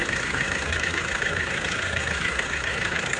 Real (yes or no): no